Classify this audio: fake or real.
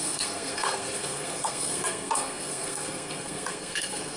fake